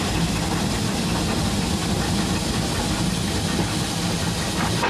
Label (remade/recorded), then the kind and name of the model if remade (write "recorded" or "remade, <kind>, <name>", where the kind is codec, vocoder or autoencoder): recorded